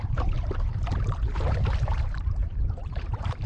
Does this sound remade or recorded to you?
remade